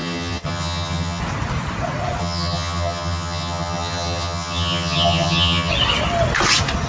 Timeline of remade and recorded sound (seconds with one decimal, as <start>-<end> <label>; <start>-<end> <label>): 0.0-1.2 remade; 1.2-2.2 recorded; 2.2-5.7 remade; 5.7-6.9 recorded

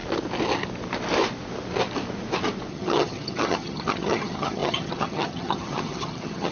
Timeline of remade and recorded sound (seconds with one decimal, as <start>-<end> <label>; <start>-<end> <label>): 0.0-2.7 recorded; 2.7-6.5 remade